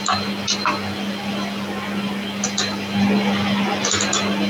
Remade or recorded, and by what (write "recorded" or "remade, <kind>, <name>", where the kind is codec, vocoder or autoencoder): recorded